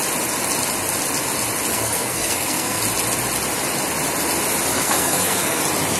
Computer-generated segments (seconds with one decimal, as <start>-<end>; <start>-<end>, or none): 1.7-2.8; 4.7-5.6